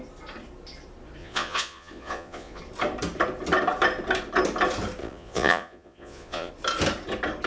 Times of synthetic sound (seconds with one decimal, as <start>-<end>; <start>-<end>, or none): 1.2-2.6; 5.0-6.5